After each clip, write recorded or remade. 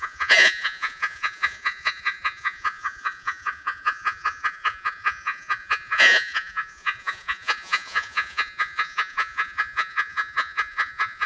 remade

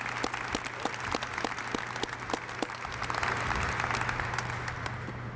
recorded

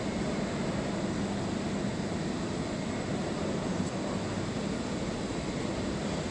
recorded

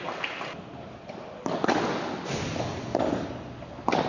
recorded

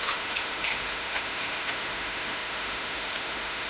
remade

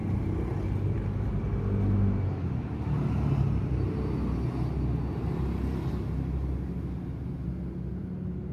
recorded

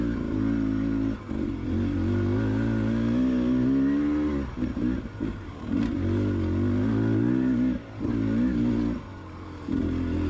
recorded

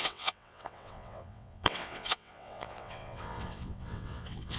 remade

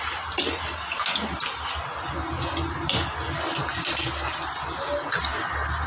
recorded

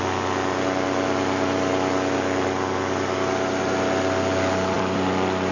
recorded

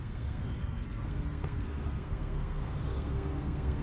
remade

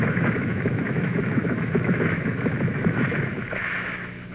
remade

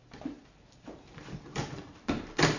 remade